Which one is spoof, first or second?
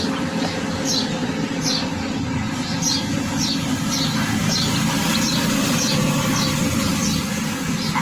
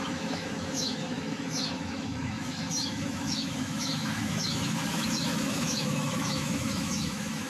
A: second